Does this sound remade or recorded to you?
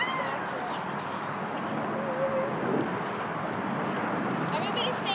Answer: recorded